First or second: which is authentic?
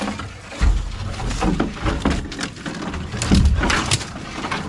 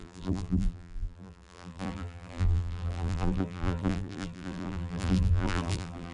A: first